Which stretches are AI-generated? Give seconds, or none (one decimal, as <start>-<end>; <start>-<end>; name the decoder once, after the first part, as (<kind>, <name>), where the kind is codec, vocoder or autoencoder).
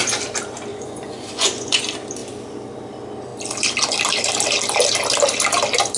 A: 0.7-1.8 (vocoder, Vocos)